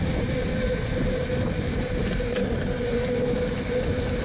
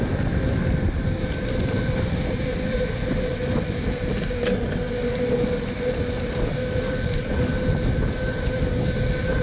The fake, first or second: first